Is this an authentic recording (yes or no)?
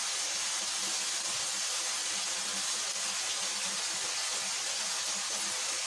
yes